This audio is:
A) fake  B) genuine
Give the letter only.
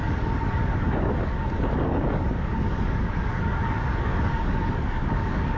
A